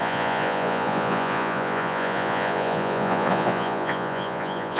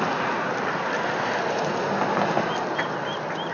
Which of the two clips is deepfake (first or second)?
first